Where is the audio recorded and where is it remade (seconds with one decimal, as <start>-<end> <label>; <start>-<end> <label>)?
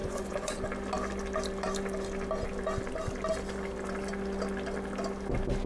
0.0-0.6 remade; 0.6-5.7 recorded